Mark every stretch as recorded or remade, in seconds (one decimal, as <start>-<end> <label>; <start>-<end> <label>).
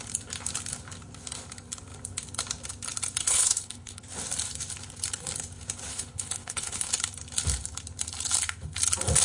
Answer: 0.0-3.2 recorded; 3.2-4.0 remade; 4.0-5.9 recorded; 5.9-6.9 remade; 6.9-9.2 recorded